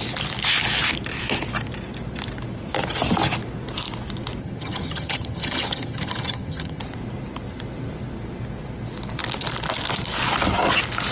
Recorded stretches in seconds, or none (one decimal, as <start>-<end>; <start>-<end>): 0.0-4.4; 6.8-11.1